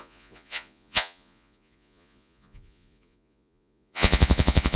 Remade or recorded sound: remade